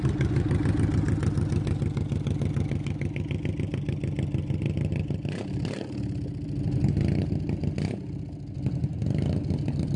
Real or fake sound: real